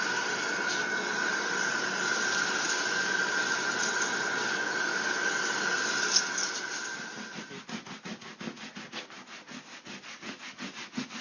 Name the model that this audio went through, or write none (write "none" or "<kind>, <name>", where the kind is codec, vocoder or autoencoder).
none